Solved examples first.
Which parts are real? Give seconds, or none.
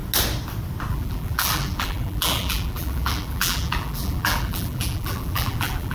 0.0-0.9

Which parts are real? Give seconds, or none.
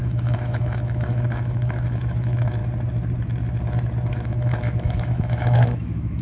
2.6-4.1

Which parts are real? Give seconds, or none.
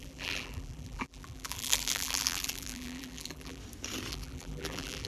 3.6-4.1